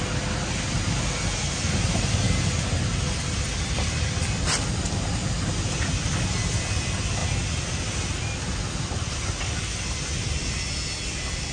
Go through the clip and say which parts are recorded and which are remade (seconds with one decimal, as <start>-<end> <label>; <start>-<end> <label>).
0.0-11.5 recorded